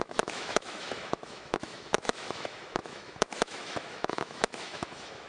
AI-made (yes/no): yes